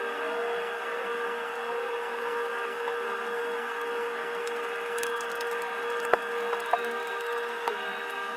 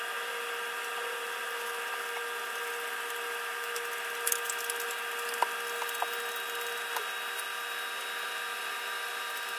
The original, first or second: second